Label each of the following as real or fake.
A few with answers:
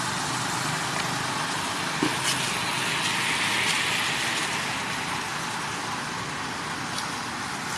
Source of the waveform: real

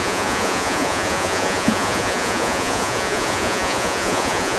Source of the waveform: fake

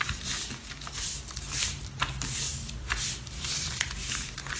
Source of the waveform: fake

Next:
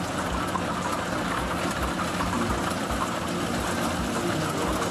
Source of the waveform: real